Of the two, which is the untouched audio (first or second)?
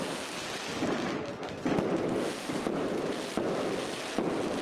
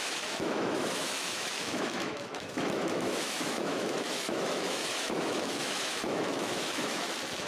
first